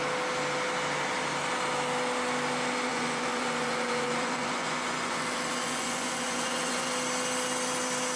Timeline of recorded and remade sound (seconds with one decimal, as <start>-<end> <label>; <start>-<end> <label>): 0.0-2.9 recorded; 2.9-6.9 remade; 6.9-8.2 recorded